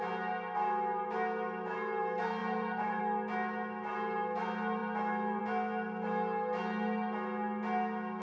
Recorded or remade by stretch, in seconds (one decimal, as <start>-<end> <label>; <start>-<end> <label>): 0.0-2.4 recorded; 2.4-3.0 remade; 3.0-8.2 recorded